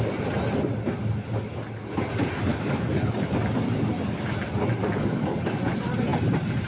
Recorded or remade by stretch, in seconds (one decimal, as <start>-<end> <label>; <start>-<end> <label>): 0.0-2.5 recorded; 2.5-3.1 remade; 3.1-4.8 recorded; 4.8-5.6 remade; 5.6-6.7 recorded